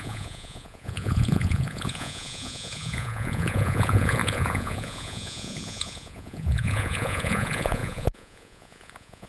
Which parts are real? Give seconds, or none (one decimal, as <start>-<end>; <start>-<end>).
none

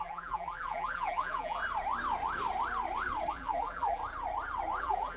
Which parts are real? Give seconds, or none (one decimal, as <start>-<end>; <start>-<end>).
1.6-3.3; 4.0-4.8

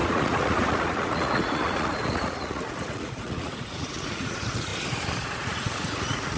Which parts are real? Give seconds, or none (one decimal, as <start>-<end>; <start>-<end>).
4.7-5.2

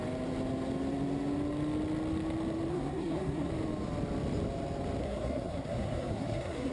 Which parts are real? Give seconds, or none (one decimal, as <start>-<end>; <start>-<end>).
0.0-2.7; 3.5-5.0

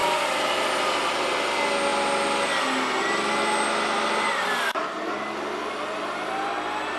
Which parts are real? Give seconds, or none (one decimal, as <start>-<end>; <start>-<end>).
0.0-7.0